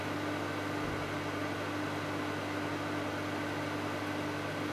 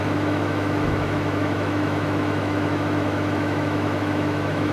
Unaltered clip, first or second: first